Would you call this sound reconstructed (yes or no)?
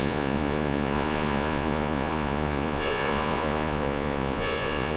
yes